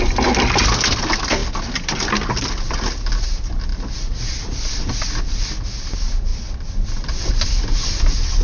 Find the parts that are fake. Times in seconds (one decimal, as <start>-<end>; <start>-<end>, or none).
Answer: none